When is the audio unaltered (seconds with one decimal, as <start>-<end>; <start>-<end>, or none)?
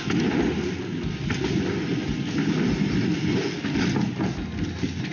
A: 0.0-5.1